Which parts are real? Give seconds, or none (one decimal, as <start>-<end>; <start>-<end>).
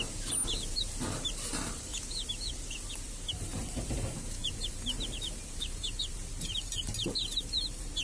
1.9-3.3